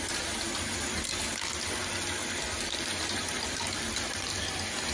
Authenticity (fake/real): real